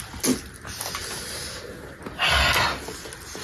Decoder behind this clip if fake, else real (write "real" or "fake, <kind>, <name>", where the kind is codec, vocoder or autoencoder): real